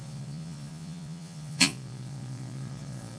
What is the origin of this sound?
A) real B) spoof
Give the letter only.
B